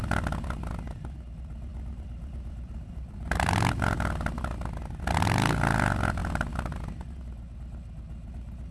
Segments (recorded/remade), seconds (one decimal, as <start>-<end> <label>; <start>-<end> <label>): 0.0-1.7 recorded; 1.7-3.5 remade; 3.5-8.7 recorded